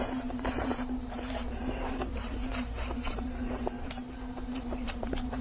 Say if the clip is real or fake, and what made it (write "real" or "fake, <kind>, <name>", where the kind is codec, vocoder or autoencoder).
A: fake, vocoder, BigVGAN v2